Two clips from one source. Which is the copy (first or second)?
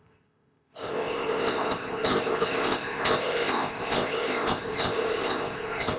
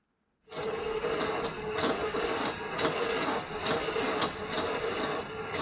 first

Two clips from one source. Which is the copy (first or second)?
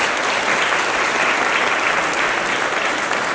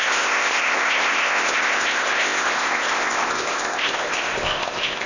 second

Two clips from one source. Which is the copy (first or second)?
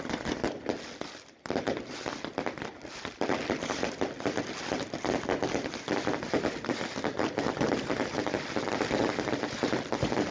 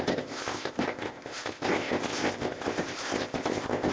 second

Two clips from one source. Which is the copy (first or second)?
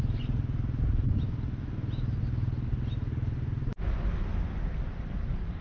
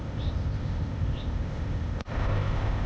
second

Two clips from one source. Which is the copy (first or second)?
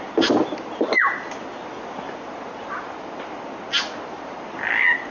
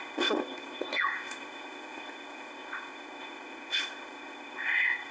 second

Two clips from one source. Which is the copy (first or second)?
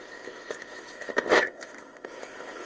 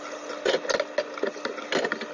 first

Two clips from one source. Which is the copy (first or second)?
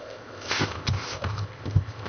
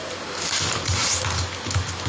first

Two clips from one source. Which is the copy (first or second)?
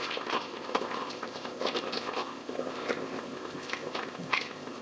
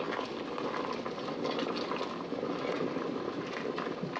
first